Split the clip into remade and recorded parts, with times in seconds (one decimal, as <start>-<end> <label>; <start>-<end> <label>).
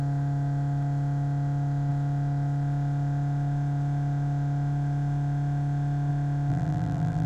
0.0-6.5 recorded; 6.5-7.3 remade